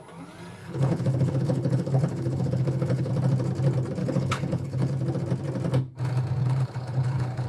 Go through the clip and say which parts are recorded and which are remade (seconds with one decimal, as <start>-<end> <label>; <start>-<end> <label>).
0.0-0.6 recorded; 0.6-3.1 remade; 3.1-4.0 recorded; 4.0-4.9 remade; 4.9-6.4 recorded; 6.4-7.5 remade